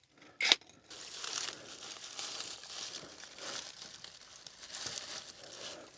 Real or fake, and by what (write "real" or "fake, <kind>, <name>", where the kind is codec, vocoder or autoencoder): real